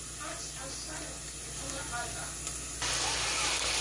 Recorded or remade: recorded